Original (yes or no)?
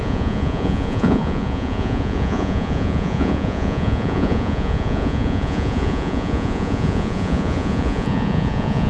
no